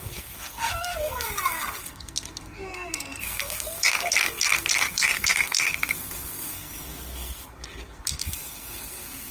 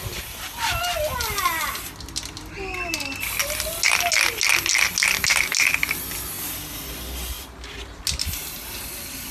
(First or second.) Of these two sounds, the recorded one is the second